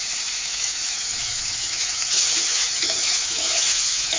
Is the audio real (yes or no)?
no